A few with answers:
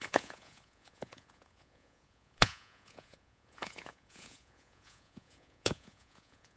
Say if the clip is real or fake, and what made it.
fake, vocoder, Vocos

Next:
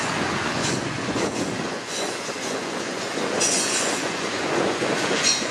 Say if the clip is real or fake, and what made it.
fake, vocoder, Vocos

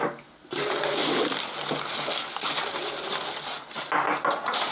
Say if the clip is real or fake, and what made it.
real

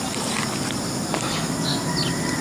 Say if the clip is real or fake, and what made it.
real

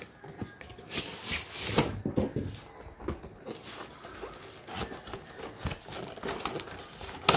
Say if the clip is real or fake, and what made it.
real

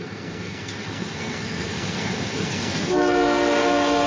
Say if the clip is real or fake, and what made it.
fake, codec, SNAC